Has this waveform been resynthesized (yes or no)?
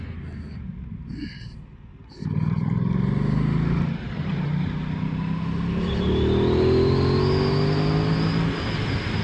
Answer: no